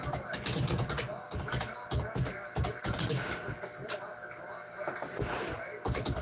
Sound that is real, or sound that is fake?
real